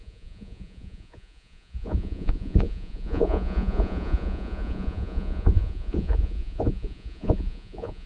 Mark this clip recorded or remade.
remade